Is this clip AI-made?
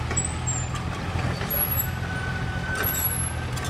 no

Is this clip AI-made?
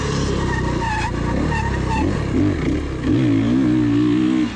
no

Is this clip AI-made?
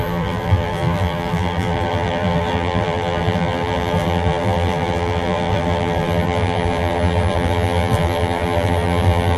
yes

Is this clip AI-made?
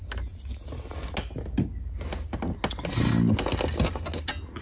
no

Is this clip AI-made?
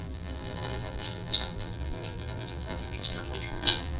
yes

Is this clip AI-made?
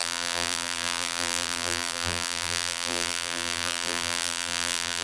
yes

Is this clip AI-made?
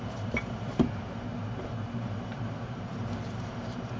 yes